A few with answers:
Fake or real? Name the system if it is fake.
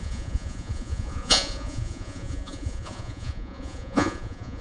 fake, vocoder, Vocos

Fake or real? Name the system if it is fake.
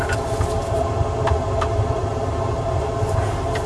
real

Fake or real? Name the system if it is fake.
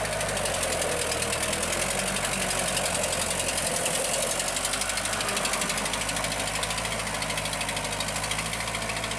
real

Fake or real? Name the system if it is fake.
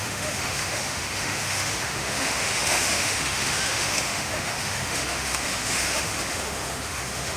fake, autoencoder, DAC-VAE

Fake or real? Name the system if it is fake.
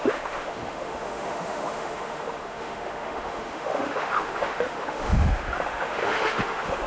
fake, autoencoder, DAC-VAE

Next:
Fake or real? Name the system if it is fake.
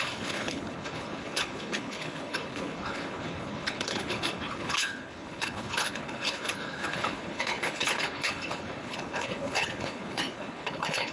fake, codec, HILCodec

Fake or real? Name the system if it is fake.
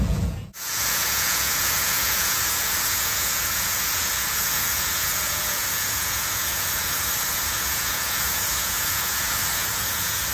fake, vocoder, Vocos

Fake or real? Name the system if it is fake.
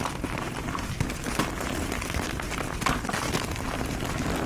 real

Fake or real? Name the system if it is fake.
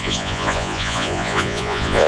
fake, vocoder, Vocos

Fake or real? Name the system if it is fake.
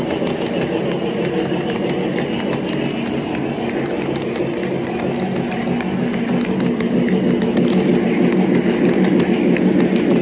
real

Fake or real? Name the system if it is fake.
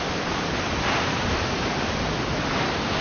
real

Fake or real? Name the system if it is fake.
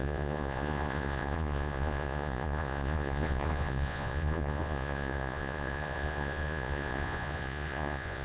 fake, vocoder, Vocos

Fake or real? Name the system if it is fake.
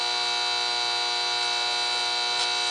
real